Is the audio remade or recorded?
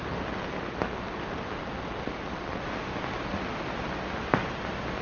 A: recorded